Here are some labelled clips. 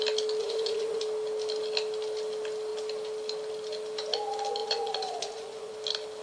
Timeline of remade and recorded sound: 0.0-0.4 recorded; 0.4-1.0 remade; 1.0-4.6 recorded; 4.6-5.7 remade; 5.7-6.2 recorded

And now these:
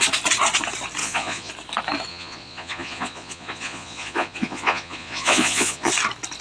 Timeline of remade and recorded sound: 0.0-1.0 recorded; 1.0-1.5 remade; 1.5-2.1 recorded; 2.1-5.9 remade; 5.9-6.4 recorded

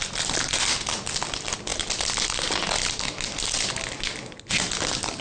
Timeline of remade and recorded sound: 0.0-5.2 recorded

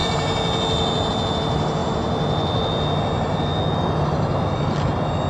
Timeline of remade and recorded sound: 0.0-5.3 recorded

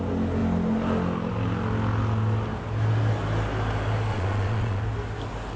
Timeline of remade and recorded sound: 0.0-4.1 recorded; 4.1-4.8 remade; 4.8-5.6 recorded

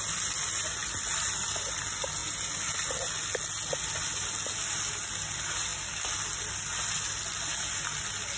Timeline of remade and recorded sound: 0.0-8.4 recorded

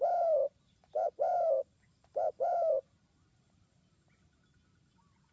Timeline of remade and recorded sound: 0.0-5.3 recorded